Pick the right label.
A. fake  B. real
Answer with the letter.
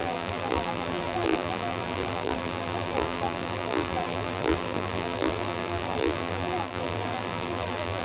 A